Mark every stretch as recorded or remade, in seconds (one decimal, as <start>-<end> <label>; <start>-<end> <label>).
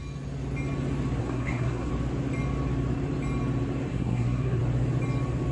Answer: 0.0-1.2 recorded; 1.2-1.9 remade; 1.9-3.9 recorded; 3.9-4.6 remade; 4.6-5.5 recorded